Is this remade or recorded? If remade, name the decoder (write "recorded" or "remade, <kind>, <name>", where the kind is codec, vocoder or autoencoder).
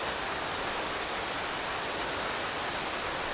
recorded